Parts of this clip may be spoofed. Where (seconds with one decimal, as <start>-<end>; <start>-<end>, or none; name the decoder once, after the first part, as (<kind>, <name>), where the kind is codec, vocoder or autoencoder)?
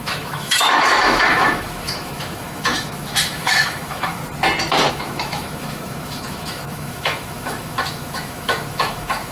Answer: 0.0-4.2 (autoencoder, DAC-VAE); 4.9-9.3